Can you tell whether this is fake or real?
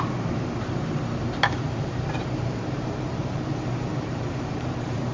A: fake